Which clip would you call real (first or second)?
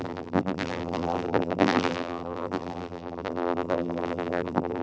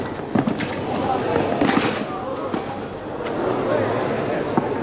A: second